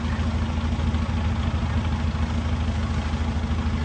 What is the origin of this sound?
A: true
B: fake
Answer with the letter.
A